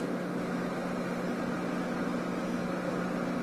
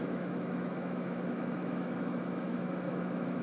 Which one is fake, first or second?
second